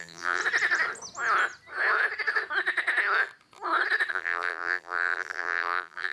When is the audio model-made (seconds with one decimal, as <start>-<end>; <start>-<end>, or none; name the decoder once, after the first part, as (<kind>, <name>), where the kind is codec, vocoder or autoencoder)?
0.0-0.4 (vocoder, BigVGAN v2); 4.1-6.1

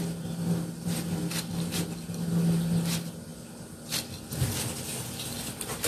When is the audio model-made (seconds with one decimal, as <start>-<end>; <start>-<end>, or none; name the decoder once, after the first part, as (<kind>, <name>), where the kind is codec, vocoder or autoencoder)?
none

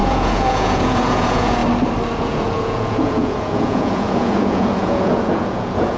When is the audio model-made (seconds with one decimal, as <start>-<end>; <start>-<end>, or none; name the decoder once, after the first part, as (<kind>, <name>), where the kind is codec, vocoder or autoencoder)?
0.0-1.6 (vocoder, Vocos); 2.2-6.0

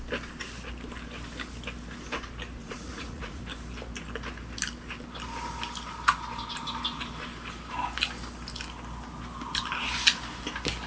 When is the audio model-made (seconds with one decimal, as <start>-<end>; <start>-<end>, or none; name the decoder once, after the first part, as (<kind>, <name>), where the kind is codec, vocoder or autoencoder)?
2.6-3.4 (vocoder, Vocos)

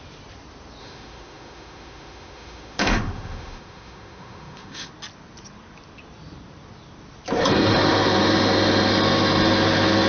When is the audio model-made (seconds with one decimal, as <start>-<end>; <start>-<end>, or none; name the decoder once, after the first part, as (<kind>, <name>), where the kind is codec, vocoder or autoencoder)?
0.8-4.9 (autoencoder, DAC-VAE)

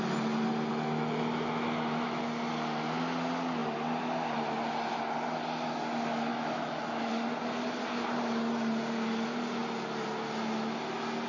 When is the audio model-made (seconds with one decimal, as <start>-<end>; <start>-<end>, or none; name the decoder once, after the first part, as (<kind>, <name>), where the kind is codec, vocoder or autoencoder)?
0.7-2.2 (autoencoder, DAC-VAE); 6.3-7.1

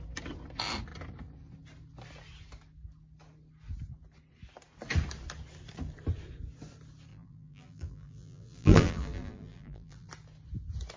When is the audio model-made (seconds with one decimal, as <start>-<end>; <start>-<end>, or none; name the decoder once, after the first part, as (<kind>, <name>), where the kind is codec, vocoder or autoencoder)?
7.1-10.1 (vocoder, BigVGAN v2)

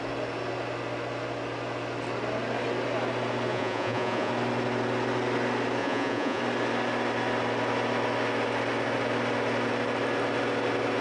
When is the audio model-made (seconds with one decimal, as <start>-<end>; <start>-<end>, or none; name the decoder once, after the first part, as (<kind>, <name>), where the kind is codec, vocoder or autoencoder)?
3.5-4.3 (vocoder, Vocos); 5.8-6.4